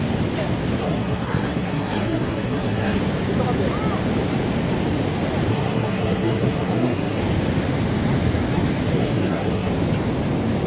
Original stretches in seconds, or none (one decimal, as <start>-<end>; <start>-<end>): 0.0-0.8; 3.0-5.5; 7.2-9.0; 9.7-10.7

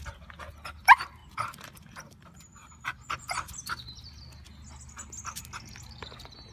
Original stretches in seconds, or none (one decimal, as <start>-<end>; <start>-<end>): 0.0-1.2; 4.2-6.5

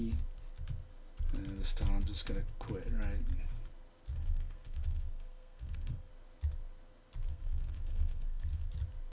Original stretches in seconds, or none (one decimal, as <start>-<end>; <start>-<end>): 0.0-4.1; 6.1-7.3; 8.7-9.1

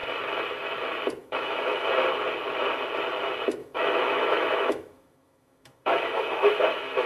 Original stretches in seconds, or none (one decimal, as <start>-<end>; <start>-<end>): 0.0-1.2; 1.9-3.6

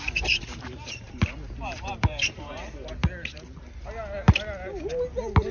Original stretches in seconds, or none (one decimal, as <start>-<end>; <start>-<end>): 3.0-5.5

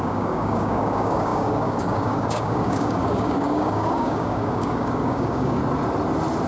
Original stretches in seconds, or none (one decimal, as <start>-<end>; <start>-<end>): 5.6-6.5

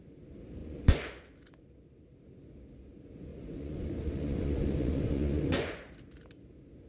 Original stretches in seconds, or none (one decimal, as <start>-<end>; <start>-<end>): 0.0-0.6; 1.2-3.3; 5.9-6.9

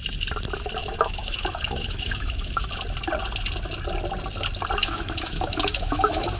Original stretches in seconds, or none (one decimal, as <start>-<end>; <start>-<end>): 0.0-0.8; 2.7-4.8